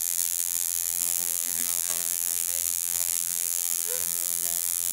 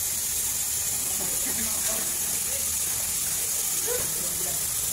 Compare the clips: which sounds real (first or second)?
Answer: second